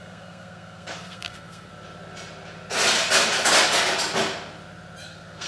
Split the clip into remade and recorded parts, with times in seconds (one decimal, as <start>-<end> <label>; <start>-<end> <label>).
0.0-1.7 remade; 1.7-5.0 recorded; 5.0-5.5 remade